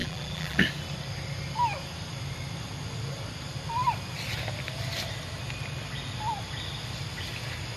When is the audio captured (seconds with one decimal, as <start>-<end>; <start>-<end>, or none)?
0.6-7.8